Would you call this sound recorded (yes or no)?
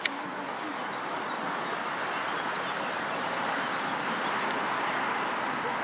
yes